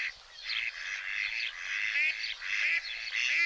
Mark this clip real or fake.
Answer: real